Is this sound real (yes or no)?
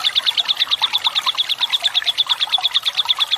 no